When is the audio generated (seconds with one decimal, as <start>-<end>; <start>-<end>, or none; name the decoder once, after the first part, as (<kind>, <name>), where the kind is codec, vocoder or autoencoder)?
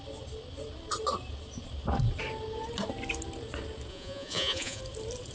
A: 3.9-4.8 (vocoder, Vocos)